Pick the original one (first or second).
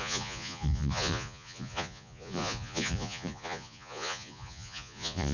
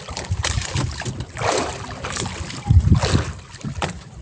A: second